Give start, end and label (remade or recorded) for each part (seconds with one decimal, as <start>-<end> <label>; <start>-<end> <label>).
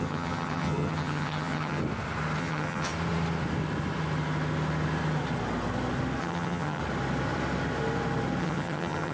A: 0.0-1.8 remade; 1.8-2.4 recorded; 2.4-2.9 remade; 2.9-6.2 recorded; 6.2-6.8 remade; 6.8-8.4 recorded; 8.4-9.1 remade